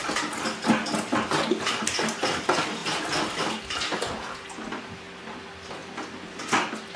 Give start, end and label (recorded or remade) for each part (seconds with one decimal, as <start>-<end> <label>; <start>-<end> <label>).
0.0-7.0 recorded